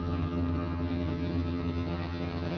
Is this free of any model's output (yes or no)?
no